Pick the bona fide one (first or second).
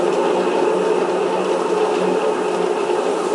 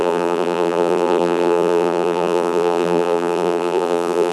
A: first